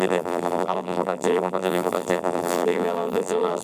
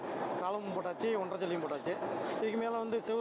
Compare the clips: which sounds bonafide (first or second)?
second